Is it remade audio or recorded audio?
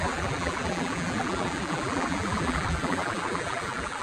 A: remade